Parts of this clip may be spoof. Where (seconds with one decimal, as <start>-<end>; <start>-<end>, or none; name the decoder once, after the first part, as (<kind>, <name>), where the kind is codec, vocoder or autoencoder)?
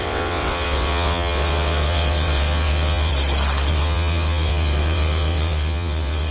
0.0-3.1 (vocoder, WaveNeXt); 3.7-6.3